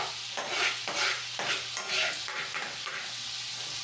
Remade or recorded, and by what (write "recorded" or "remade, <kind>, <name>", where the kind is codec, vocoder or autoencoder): recorded